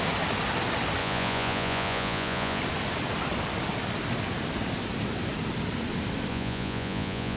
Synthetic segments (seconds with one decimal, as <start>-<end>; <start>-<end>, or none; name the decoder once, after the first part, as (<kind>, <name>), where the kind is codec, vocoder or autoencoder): 1.0-2.6 (vocoder, Vocos); 6.3-7.4